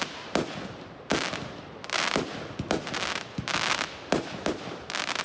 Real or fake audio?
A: real